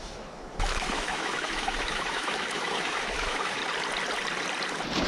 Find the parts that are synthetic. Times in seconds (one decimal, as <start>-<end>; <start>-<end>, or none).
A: 0.0-3.6